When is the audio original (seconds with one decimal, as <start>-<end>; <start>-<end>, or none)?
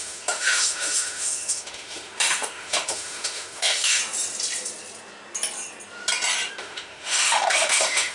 4.0-6.6